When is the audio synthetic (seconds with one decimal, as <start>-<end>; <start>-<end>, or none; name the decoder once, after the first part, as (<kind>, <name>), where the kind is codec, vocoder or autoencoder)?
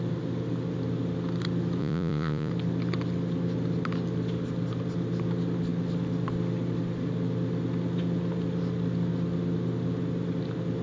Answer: 1.8-2.5 (vocoder, Vocos)